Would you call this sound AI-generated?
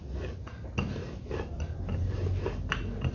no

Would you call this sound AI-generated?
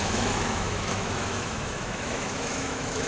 yes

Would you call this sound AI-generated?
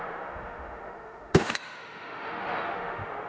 yes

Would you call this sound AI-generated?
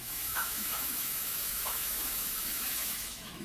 yes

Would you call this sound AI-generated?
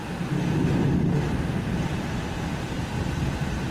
no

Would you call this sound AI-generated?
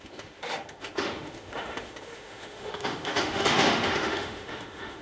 yes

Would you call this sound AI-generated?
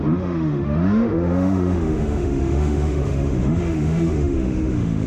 yes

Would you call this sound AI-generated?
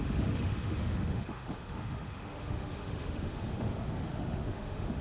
yes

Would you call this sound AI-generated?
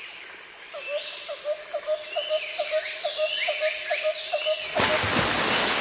no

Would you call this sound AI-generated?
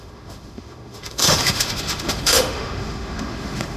yes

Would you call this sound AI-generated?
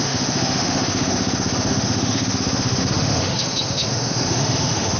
yes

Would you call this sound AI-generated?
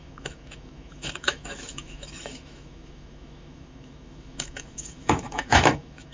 yes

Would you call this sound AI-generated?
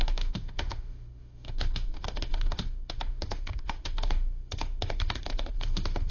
yes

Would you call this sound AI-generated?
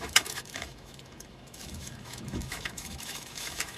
yes